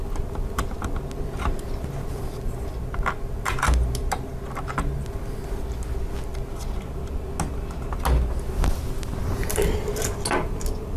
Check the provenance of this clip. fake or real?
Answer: real